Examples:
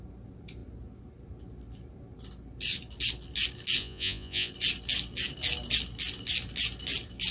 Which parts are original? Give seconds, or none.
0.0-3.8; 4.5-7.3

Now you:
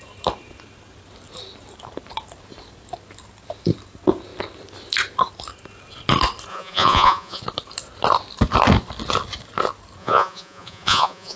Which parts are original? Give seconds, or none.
0.0-6.5; 7.4-10.0

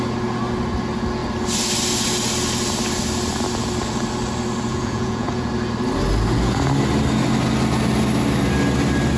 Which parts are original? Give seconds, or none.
0.0-4.7; 5.5-9.2

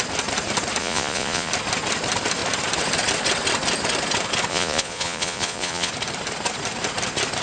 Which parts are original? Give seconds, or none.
0.0-0.8; 1.5-4.5; 5.9-7.4

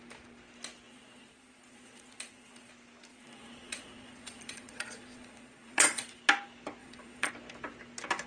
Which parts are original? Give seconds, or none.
0.0-0.9; 2.7-3.1; 6.2-6.8; 7.3-8.3